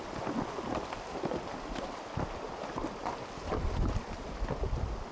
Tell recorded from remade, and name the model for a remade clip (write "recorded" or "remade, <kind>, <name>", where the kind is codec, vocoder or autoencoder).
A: recorded